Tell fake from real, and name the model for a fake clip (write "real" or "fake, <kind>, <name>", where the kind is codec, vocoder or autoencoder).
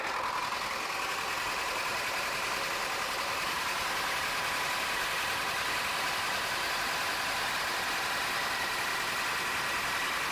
real